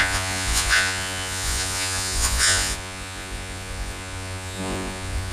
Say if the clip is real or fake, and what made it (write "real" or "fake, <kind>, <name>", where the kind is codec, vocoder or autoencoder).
fake, vocoder, Vocos